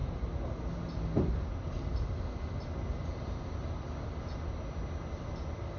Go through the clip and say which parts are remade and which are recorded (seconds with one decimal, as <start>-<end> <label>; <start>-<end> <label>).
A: 0.0-5.8 recorded